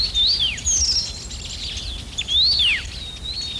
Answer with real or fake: real